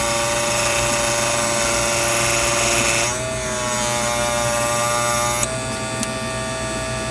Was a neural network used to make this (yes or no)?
no